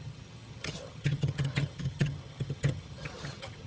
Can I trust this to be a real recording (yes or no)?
no